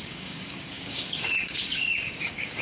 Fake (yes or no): yes